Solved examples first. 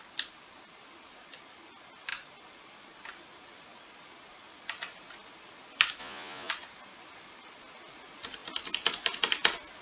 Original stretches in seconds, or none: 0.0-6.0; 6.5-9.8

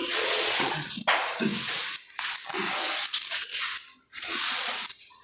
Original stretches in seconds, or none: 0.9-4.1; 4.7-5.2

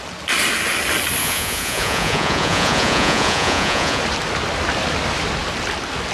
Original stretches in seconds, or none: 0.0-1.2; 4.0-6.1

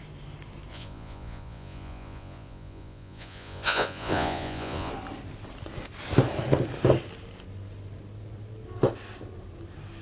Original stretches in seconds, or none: 0.0-0.7; 4.9-10.0

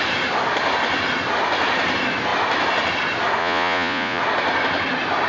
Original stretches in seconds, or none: 0.0-3.4; 4.2-5.3